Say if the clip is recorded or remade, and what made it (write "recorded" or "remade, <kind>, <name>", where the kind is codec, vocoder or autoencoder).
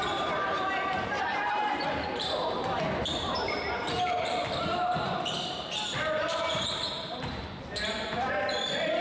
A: remade, vocoder, BigVGAN v2